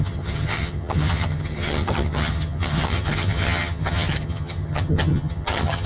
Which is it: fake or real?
fake